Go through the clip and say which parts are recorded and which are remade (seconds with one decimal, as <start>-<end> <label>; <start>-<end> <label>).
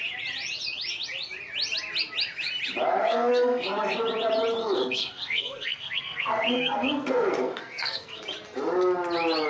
0.0-3.0 recorded; 3.0-4.0 remade; 4.0-4.6 recorded; 4.6-8.2 remade; 8.2-9.5 recorded